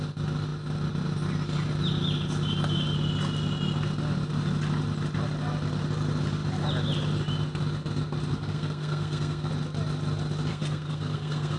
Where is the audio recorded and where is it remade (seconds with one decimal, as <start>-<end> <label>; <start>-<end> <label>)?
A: 0.0-8.3 recorded; 8.3-9.5 remade; 9.5-10.5 recorded; 10.5-11.6 remade